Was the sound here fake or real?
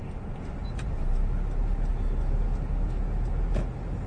real